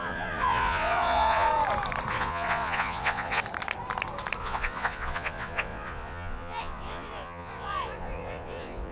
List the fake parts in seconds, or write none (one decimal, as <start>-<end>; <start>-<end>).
0.0-1.5; 2.1-3.4; 4.4-8.9